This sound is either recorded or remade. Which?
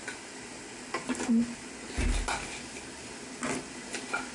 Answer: recorded